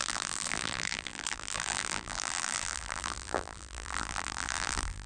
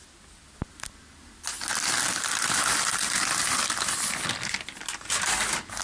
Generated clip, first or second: first